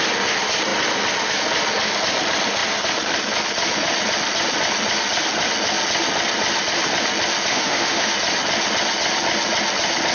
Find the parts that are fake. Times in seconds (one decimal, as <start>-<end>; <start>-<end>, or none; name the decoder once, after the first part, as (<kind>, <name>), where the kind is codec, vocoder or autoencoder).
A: 7.5-8.1 (autoencoder, DAC-VAE)